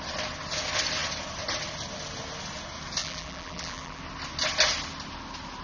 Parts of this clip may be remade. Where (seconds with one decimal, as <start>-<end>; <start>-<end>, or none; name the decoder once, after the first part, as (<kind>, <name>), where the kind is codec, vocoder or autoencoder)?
3.0-4.0 (vocoder, BigVGAN v2)